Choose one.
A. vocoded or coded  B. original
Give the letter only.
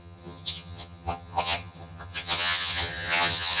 A